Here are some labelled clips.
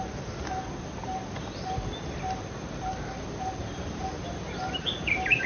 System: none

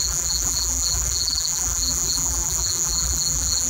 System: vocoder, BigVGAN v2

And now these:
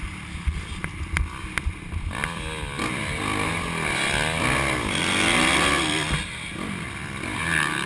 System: none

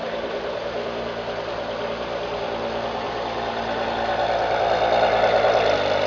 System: none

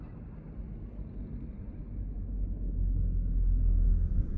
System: none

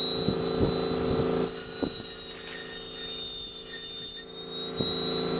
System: none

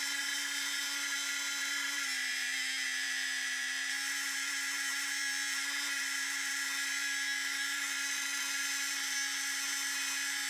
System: vocoder, BigVGAN v2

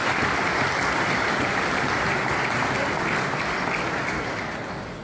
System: none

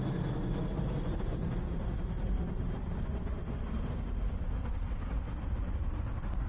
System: none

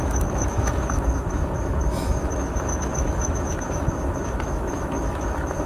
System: autoencoder, DAC-VAE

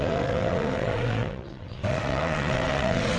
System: vocoder, WaveNeXt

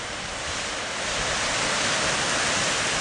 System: none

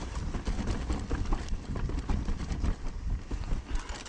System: none